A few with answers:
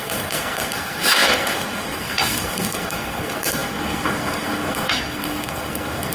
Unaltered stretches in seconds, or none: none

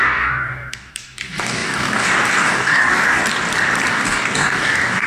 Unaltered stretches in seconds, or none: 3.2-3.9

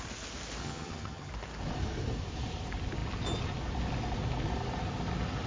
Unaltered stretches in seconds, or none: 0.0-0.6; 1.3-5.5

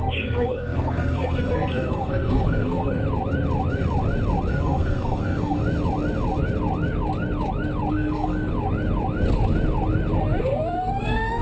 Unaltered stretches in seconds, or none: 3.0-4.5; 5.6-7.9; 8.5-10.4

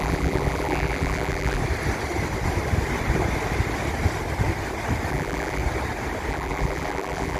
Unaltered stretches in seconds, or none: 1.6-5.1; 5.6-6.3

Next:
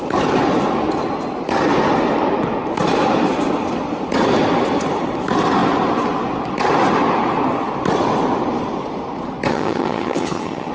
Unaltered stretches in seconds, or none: 0.0-9.5

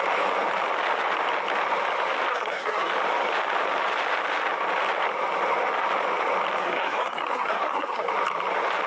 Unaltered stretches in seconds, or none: 0.0-2.3; 2.9-6.6; 8.1-8.9